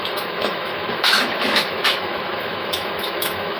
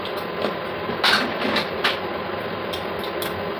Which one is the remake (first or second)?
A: first